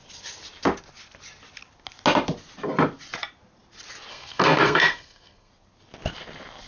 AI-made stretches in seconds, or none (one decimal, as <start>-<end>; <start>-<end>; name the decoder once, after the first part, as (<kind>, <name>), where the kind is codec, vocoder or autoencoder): 4.1-5.5 (codec, SNAC)